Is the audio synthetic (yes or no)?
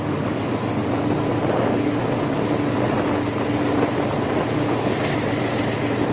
no